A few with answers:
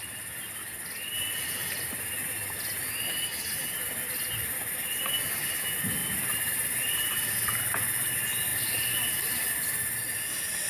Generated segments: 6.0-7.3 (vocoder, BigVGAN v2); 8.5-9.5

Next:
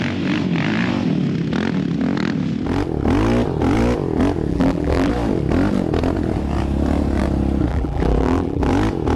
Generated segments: 4.5-5.1 (vocoder, BigVGAN v2); 7.7-8.7

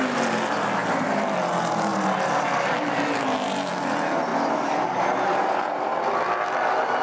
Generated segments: 0.8-1.5 (vocoder, BigVGAN v2); 4.3-6.3